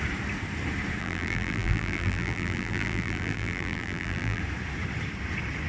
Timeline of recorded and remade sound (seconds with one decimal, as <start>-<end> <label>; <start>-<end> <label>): 0.0-1.0 recorded; 1.0-4.4 remade; 4.4-5.7 recorded